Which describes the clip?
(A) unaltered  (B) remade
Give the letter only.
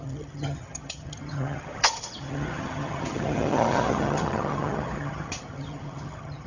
B